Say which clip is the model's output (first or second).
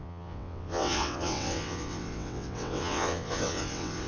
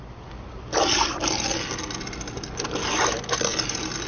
first